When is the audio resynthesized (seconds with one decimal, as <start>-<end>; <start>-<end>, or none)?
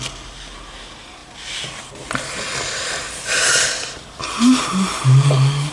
none